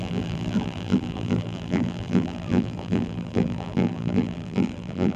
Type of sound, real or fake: fake